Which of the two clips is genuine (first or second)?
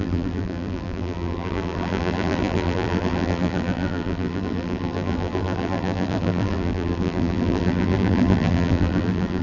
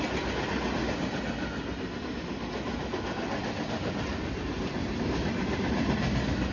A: second